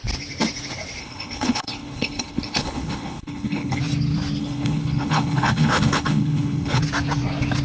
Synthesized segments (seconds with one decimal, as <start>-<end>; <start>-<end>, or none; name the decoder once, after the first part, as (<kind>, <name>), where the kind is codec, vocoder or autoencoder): 1.0-3.8 (codec, HILCodec); 4.4-6.8